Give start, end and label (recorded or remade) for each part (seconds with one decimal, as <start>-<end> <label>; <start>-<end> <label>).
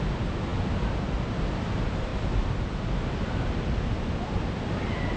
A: 0.0-5.2 recorded